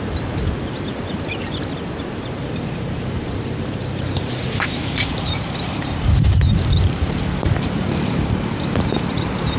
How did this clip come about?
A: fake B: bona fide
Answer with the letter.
A